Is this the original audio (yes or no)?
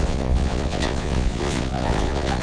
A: no